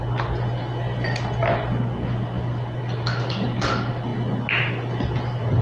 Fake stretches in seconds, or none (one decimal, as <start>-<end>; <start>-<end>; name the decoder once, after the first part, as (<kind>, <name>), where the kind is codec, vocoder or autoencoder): none